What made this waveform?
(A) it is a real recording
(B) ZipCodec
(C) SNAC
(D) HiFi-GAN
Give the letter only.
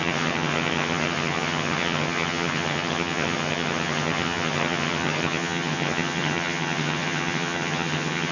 D